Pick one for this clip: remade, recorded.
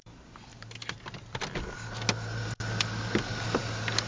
recorded